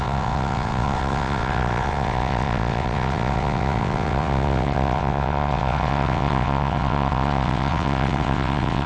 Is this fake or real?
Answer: fake